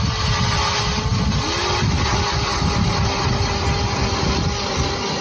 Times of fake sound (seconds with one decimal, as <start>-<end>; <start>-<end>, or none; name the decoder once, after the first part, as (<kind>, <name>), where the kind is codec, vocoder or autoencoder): none